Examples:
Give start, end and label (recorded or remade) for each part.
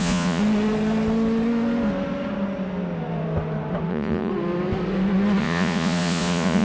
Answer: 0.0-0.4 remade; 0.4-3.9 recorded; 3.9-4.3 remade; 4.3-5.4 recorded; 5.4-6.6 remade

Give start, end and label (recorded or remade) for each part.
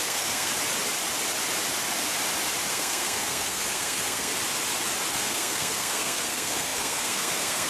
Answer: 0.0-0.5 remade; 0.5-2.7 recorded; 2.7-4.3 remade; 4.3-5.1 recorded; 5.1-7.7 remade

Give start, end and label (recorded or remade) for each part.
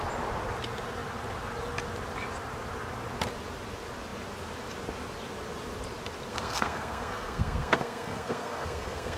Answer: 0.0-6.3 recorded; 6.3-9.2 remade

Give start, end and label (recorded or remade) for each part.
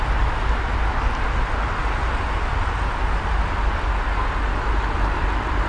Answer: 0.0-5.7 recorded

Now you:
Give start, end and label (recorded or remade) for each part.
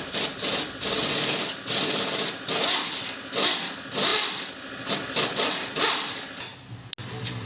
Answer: 0.0-7.5 recorded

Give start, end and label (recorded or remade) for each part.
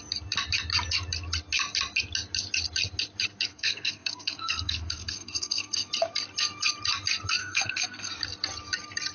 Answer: 0.0-3.5 recorded; 3.5-5.9 remade; 5.9-7.4 recorded; 7.4-8.1 remade; 8.1-9.1 recorded